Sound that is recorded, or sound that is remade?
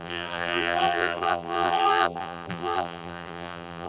remade